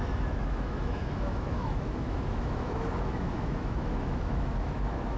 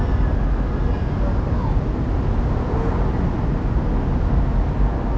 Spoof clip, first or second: first